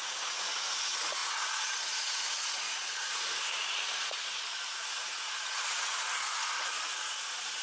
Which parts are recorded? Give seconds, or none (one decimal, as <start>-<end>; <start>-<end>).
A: none